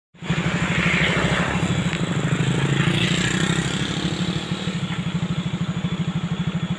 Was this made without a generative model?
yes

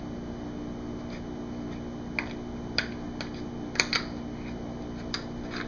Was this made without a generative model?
yes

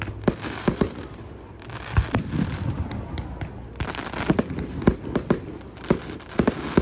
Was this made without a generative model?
no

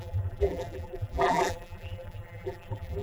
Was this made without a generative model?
no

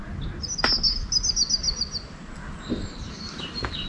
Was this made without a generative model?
yes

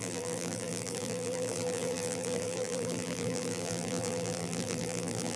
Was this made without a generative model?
no